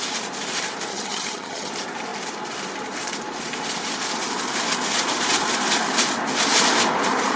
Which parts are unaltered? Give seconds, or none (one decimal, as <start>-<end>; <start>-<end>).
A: 0.0-0.9; 1.7-7.4